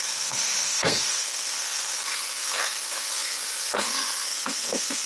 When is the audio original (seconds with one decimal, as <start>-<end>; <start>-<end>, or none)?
none